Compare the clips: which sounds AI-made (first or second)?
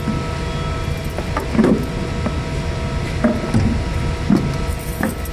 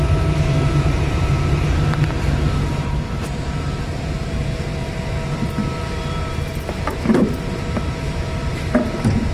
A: second